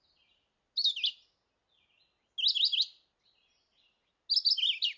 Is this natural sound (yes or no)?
yes